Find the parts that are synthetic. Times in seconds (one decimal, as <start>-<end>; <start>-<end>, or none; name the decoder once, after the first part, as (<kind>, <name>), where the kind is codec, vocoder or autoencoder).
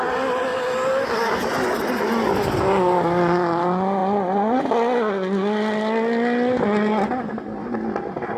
none